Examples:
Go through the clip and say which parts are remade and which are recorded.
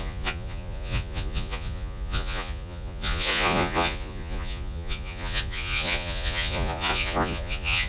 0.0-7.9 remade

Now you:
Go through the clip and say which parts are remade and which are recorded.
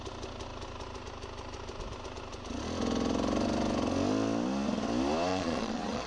0.0-5.3 recorded; 5.3-6.1 remade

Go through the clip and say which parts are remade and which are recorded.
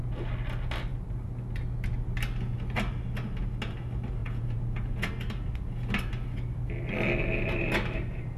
0.0-4.2 recorded; 4.2-5.1 remade; 5.1-8.4 recorded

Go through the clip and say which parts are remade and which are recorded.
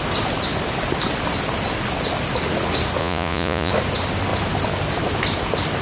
0.0-3.0 recorded; 3.0-3.7 remade; 3.7-5.8 recorded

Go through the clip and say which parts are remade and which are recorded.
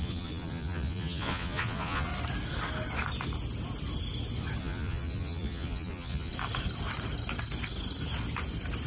0.0-2.1 remade; 2.1-4.6 recorded; 4.6-6.3 remade; 6.3-8.9 recorded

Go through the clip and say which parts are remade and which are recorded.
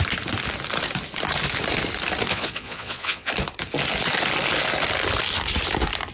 0.0-2.3 recorded; 2.3-3.3 remade; 3.3-6.1 recorded